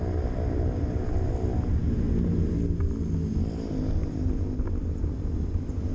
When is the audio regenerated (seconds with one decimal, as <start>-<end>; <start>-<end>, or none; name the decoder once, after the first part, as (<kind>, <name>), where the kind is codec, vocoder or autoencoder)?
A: none